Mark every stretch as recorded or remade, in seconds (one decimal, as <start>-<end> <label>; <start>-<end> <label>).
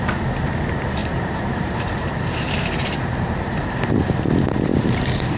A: 0.0-1.0 recorded; 1.0-4.2 remade; 4.2-5.4 recorded